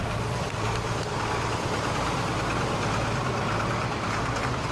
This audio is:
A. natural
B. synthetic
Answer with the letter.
A